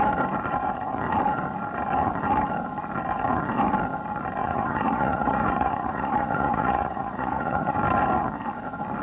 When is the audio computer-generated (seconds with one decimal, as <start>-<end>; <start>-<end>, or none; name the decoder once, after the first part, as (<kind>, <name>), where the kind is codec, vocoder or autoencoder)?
4.4-7.8 (vocoder, Vocos)